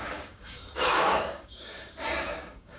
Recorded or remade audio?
remade